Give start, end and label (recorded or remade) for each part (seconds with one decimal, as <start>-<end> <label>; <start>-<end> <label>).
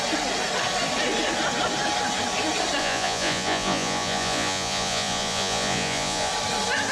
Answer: 0.0-2.8 recorded; 2.8-6.3 remade; 6.3-6.9 recorded